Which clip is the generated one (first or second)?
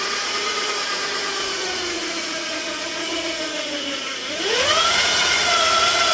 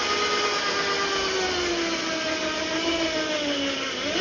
first